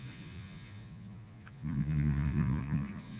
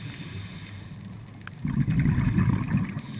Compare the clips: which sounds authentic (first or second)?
second